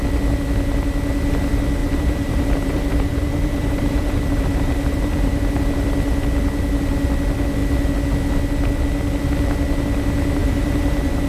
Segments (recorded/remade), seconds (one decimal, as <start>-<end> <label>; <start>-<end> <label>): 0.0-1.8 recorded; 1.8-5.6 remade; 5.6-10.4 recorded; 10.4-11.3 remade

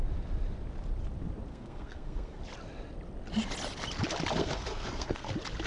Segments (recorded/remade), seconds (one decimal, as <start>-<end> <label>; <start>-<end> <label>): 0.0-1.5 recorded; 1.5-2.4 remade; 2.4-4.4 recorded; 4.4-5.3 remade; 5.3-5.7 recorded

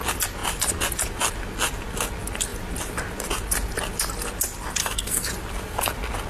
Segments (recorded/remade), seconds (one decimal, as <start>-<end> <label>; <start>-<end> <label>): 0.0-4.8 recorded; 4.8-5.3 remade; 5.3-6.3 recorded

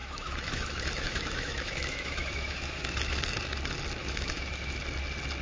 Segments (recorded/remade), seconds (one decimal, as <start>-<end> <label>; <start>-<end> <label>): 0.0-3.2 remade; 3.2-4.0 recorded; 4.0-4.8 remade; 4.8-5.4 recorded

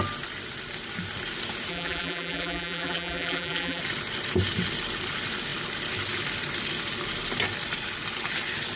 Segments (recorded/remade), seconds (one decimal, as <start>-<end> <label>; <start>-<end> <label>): 0.0-1.7 recorded; 1.7-3.8 remade; 3.8-8.8 recorded

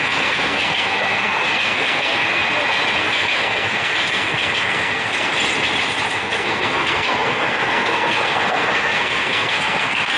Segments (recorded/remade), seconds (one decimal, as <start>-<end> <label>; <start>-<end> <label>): 0.0-2.4 remade; 2.4-3.0 recorded; 3.0-5.3 remade; 5.3-6.1 recorded; 6.1-10.2 remade